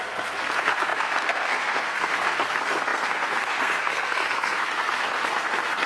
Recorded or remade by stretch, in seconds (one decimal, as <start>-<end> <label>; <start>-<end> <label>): 0.0-5.9 remade